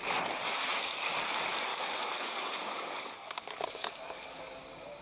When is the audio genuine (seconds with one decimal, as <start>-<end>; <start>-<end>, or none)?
0.0-1.7